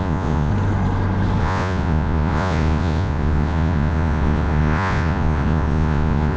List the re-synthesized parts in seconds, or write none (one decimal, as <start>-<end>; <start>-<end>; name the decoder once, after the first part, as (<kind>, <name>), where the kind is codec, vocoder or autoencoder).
0.0-0.5 (vocoder, Vocos); 1.4-6.4